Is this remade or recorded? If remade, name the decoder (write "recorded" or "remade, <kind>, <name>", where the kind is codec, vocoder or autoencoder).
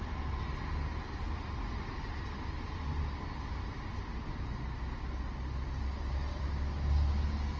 recorded